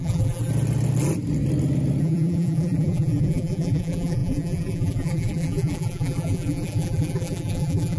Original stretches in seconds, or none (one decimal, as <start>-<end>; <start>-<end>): 0.5-2.0